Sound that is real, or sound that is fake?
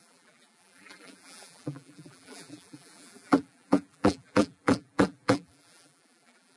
fake